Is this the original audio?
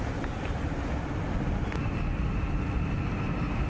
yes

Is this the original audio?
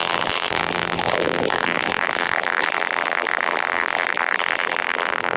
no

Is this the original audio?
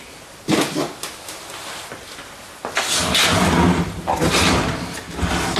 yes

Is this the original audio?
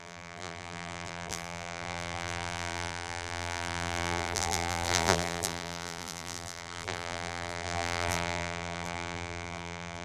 no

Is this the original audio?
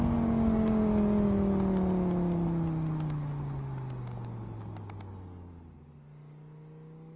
yes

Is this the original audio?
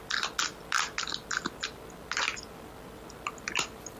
yes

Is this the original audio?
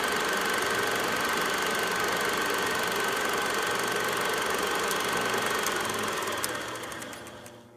yes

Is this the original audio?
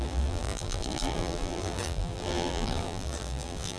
no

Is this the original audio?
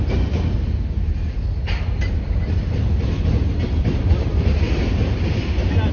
yes